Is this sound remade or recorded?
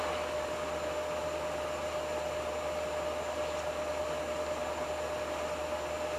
recorded